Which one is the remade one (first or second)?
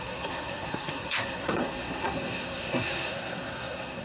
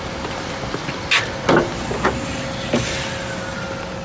first